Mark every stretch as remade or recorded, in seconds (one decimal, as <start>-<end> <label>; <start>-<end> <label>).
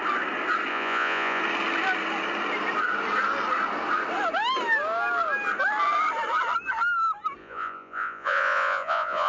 0.0-0.7 recorded; 0.7-1.4 remade; 1.4-7.4 recorded; 7.4-9.3 remade